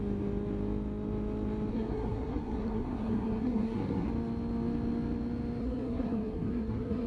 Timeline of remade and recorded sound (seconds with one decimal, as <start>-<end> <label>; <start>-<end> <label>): 0.0-1.7 recorded; 1.7-4.1 remade; 4.1-5.6 recorded; 5.6-7.1 remade